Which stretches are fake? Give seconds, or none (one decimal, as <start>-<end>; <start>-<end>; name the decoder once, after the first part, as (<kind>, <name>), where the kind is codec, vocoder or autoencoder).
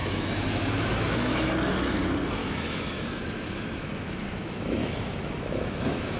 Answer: 0.0-1.5 (autoencoder, DAC-VAE); 2.4-6.2